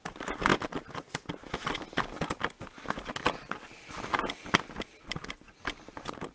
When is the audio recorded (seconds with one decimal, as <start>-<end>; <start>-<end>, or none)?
0.0-6.3